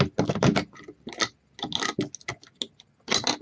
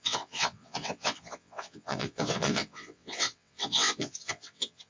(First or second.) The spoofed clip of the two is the second